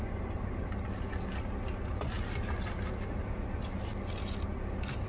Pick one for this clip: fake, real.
real